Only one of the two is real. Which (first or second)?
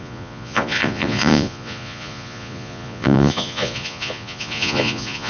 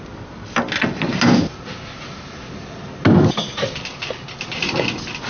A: second